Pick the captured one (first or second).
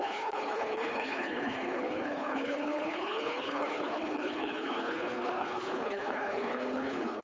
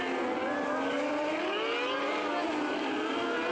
second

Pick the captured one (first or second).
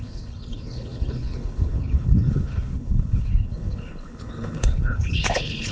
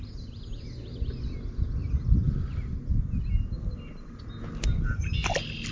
second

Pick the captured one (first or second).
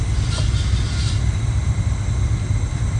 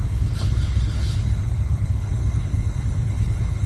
first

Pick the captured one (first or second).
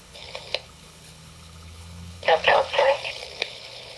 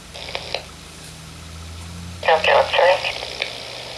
second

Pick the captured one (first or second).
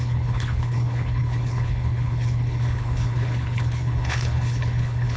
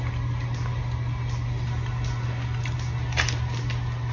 second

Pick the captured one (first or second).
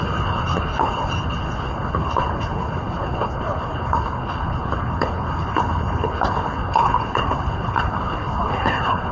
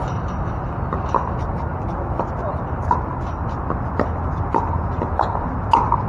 second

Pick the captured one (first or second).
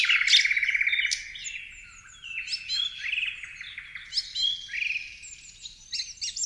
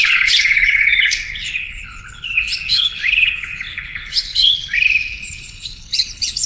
first